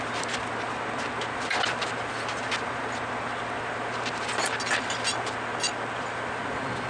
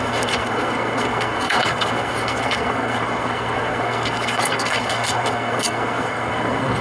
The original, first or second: first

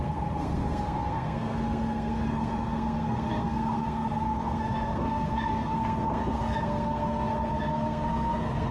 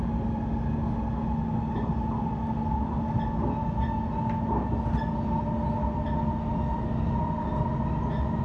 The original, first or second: second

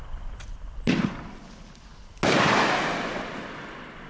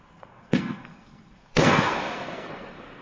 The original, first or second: first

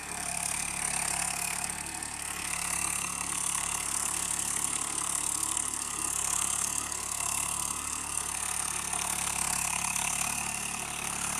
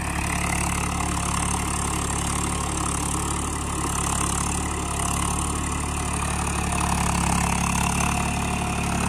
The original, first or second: second